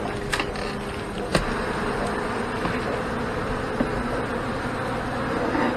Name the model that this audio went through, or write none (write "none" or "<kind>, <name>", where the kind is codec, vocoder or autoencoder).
none